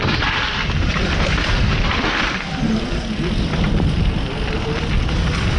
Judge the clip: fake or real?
real